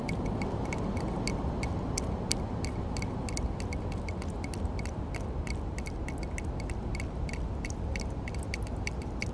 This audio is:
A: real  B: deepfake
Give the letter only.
A